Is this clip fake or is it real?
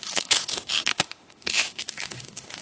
fake